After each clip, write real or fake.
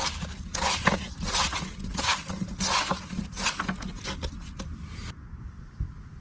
real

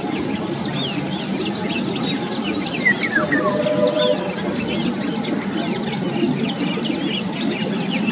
real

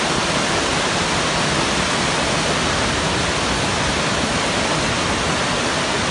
real